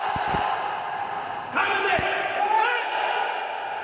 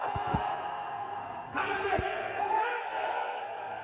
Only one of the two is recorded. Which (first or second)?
first